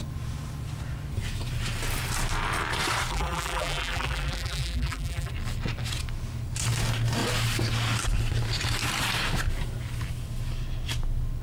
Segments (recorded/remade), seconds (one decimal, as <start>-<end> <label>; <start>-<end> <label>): 0.0-3.1 recorded; 3.1-5.3 remade; 5.3-11.4 recorded

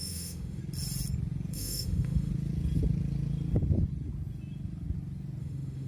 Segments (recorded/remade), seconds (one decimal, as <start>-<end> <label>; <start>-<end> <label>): 0.0-0.6 remade; 0.6-1.5 recorded; 1.5-2.3 remade; 2.3-5.4 recorded; 5.4-5.9 remade

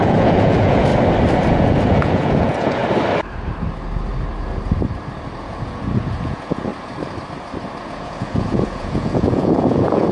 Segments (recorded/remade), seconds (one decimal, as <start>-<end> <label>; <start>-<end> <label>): 0.0-0.9 remade; 0.9-1.5 recorded; 1.5-2.8 remade; 2.8-5.4 recorded; 5.4-6.7 remade; 6.7-7.8 recorded; 7.8-10.1 remade

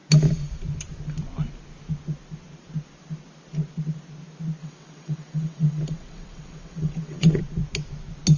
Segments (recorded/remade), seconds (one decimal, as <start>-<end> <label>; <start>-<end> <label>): 0.0-4.6 recorded; 4.6-7.4 remade; 7.4-8.4 recorded